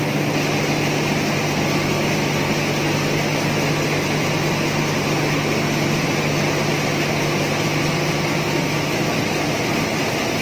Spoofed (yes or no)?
no